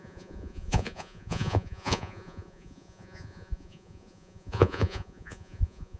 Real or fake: fake